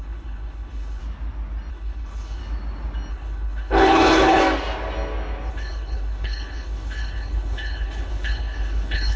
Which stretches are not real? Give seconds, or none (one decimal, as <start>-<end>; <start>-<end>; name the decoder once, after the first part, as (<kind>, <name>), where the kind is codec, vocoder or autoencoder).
0.0-1.0 (codec, HILCodec); 1.7-2.4; 3.1-4.4; 5.5-9.2